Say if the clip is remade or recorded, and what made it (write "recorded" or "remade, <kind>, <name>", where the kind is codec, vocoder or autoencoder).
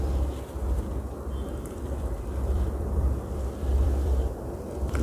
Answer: remade, vocoder, BigVGAN v2